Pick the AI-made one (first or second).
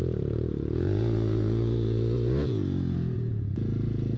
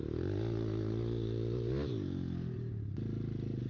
first